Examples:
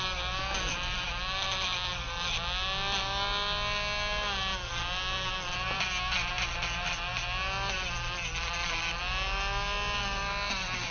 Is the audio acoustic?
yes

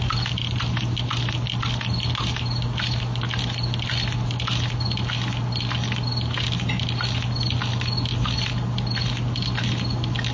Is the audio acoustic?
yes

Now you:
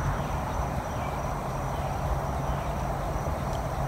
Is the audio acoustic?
no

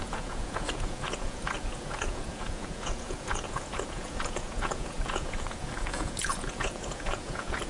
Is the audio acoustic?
no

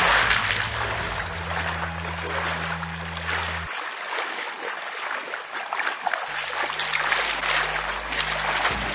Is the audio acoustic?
yes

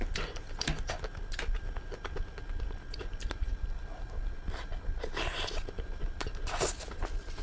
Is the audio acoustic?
yes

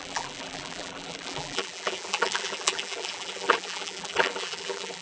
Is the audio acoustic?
no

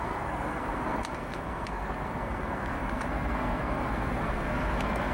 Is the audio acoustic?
no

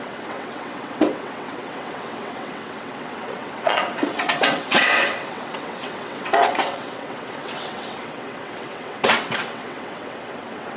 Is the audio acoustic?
no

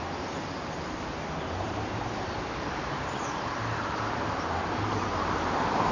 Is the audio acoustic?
no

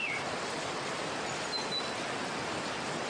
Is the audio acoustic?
yes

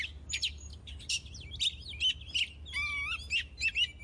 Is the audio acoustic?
yes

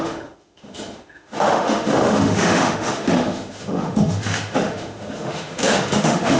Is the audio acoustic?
no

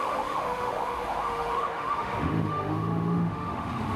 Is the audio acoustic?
no